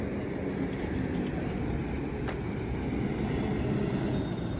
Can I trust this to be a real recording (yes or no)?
yes